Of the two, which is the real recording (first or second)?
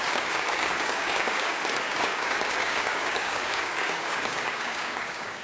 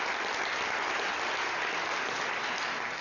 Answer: second